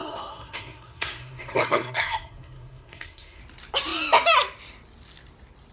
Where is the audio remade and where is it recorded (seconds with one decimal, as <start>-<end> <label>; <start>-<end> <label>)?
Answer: 0.0-3.4 remade; 3.4-5.7 recorded